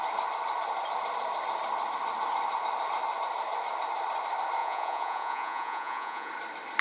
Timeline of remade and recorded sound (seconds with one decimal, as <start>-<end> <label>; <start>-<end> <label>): 0.0-4.6 recorded; 4.6-6.3 remade; 6.3-6.8 recorded